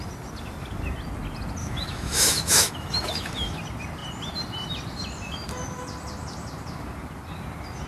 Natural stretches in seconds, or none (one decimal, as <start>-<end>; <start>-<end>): 0.0-1.6; 3.6-7.9